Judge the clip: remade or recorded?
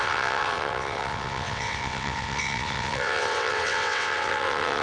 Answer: remade